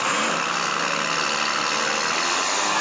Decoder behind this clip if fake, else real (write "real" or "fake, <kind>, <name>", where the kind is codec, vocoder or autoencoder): real